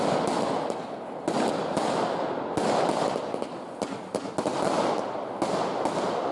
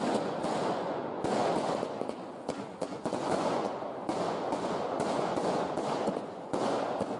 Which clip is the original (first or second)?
first